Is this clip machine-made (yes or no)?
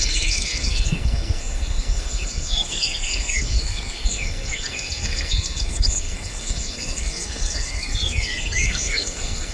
yes